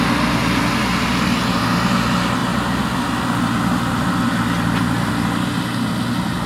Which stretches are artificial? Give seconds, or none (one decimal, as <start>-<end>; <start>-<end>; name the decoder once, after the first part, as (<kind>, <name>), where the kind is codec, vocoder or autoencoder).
none